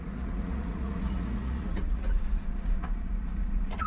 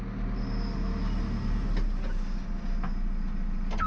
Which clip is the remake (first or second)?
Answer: first